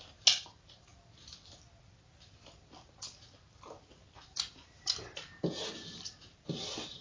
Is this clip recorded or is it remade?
recorded